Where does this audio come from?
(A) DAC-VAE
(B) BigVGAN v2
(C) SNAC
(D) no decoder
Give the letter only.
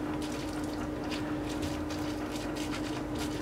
D